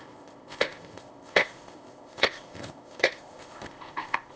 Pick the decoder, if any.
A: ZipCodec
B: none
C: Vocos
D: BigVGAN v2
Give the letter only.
A